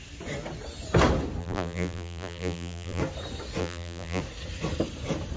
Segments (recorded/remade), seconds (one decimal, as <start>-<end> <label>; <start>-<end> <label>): 0.0-1.4 recorded; 1.4-3.0 remade; 3.0-3.6 recorded; 3.6-4.2 remade; 4.2-5.4 recorded